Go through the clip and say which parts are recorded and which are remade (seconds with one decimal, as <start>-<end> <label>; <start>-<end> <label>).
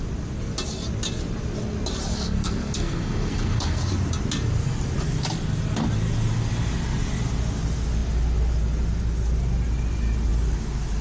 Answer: 0.0-2.1 recorded; 2.1-3.8 remade; 3.8-11.0 recorded